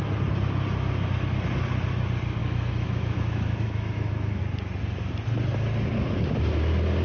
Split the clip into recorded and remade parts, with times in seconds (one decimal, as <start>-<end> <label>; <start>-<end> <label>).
0.0-2.4 recorded; 2.4-4.4 remade; 4.4-7.0 recorded